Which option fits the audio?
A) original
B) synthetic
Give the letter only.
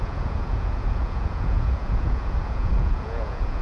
B